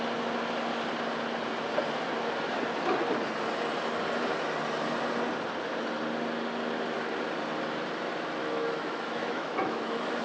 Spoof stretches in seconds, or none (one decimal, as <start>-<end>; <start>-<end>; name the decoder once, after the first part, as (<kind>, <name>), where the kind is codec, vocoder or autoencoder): 8.4-10.2 (autoencoder, DAC-VAE)